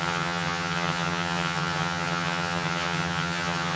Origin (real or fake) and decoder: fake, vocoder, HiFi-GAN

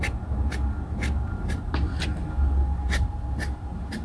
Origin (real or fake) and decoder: real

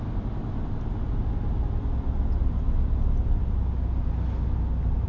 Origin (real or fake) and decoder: real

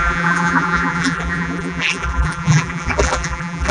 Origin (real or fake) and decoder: fake, vocoder, BigVGAN v2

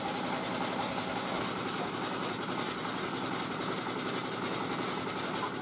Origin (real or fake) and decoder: real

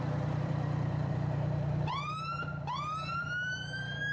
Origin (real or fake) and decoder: fake, vocoder, BigVGAN v2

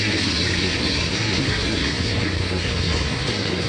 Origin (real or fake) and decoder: fake, codec, SNAC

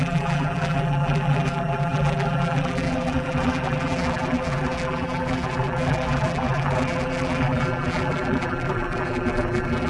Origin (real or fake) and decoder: fake, vocoder, BigVGAN v2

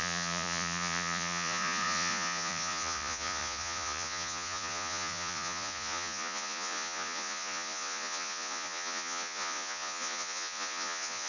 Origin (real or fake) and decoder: fake, vocoder, Vocos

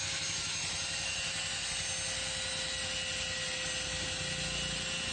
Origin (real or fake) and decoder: real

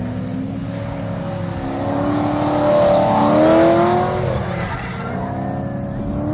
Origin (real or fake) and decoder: real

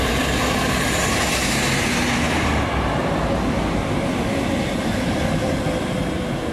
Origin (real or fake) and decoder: real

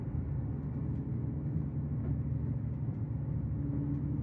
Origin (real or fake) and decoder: real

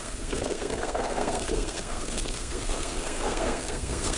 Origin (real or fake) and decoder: fake, codec, SNAC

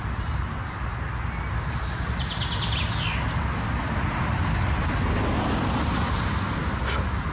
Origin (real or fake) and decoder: real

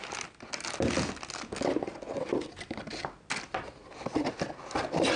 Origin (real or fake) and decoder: real